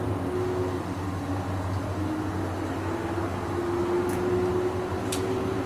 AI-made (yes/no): no